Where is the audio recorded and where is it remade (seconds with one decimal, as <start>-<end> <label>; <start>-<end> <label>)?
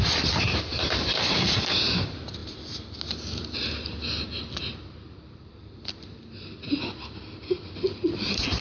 0.0-0.7 recorded; 0.7-1.6 remade; 1.6-8.6 recorded